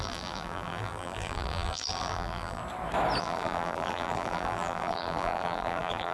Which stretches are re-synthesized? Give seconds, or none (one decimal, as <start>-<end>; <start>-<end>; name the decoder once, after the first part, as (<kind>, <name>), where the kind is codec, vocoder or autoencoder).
0.0-2.6 (vocoder, BigVGAN v2); 3.2-6.1